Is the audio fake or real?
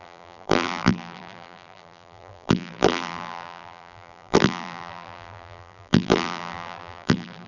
fake